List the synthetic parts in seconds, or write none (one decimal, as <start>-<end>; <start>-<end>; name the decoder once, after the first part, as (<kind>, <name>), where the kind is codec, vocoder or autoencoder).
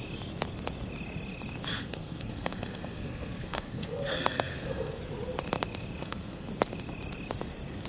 1.7-5.0 (codec, SNAC); 6.0-6.5